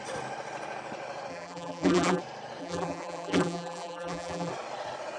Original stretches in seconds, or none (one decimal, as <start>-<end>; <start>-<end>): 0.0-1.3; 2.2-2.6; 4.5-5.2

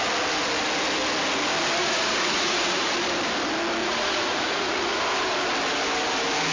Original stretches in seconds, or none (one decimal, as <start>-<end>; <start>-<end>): 0.0-1.8; 2.9-3.8; 5.0-6.5

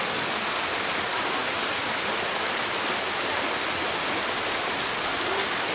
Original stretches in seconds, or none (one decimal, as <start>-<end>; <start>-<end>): 0.0-5.7

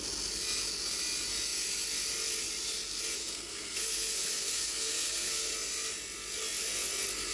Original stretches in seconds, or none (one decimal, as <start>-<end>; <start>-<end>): 0.0-3.2; 5.5-7.3